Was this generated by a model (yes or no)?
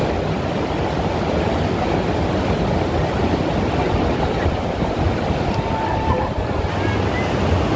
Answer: no